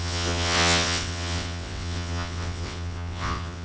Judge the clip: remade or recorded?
remade